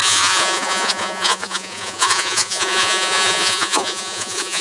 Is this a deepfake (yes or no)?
yes